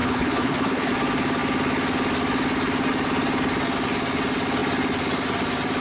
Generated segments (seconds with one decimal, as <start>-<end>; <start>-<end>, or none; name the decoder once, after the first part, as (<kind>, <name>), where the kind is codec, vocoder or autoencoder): 0.0-0.9 (codec, HILCodec)